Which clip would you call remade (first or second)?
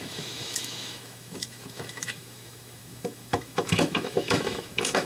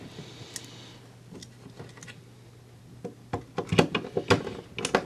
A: first